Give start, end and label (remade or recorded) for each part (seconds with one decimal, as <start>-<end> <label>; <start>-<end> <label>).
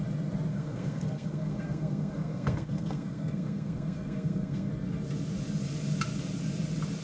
0.0-0.5 recorded; 0.5-4.7 remade; 4.7-7.0 recorded